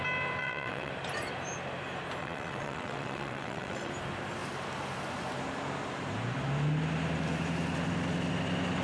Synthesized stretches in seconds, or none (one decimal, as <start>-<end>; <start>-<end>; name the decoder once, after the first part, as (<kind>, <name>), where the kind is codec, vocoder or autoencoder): 0.4-0.9 (vocoder, WaveNeXt); 2.2-3.9